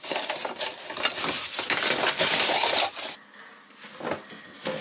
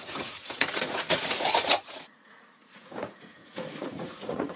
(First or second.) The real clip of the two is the first